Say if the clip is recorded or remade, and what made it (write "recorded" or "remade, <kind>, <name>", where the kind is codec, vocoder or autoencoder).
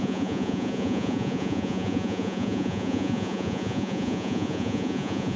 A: remade, vocoder, Vocos